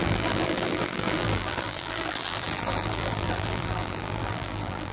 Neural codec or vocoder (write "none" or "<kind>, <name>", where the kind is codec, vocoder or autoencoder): vocoder, BigVGAN v2